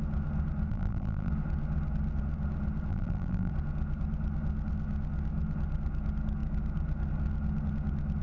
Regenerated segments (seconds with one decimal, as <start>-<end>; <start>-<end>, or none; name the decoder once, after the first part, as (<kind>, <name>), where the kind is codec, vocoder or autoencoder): 0.7-1.3 (vocoder, BigVGAN v2); 2.9-3.5